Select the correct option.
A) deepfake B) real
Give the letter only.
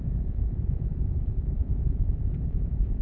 A